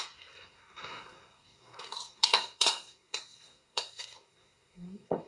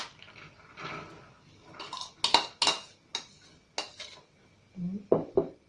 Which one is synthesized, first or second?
first